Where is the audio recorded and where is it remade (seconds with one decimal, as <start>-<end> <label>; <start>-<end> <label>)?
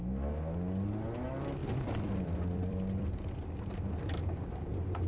0.0-1.6 recorded; 1.6-5.1 remade